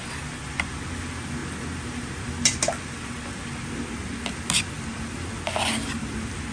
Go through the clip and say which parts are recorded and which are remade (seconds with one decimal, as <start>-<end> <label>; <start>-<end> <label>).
0.0-6.5 recorded